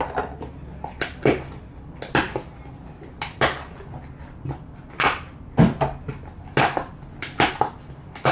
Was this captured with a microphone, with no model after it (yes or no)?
yes